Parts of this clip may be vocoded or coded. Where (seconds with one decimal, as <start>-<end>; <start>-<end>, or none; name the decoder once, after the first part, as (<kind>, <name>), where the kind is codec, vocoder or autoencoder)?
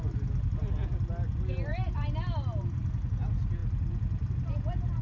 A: none